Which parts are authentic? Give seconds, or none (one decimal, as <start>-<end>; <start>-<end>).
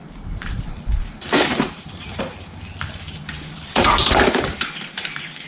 none